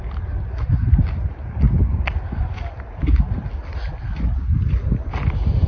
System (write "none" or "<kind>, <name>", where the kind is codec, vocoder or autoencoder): none